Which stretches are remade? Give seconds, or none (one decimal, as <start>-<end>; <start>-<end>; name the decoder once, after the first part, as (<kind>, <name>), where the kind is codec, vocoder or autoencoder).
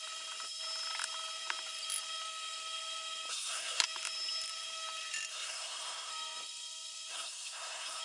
3.3-3.8 (codec, SNAC); 5.3-6.1; 7.1-8.0